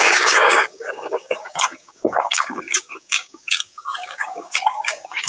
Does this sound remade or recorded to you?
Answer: remade